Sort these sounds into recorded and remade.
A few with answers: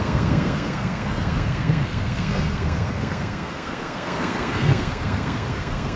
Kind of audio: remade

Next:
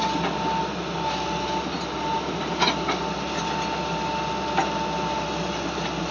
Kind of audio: recorded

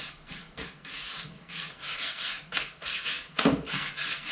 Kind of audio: remade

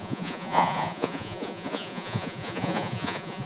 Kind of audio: remade